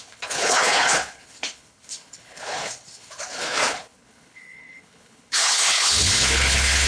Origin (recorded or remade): remade